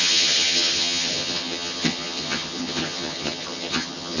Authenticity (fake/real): fake